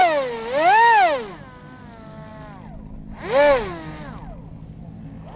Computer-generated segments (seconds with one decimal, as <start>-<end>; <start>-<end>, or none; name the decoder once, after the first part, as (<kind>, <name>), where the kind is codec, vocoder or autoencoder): none